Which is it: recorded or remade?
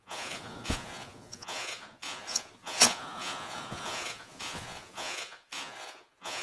remade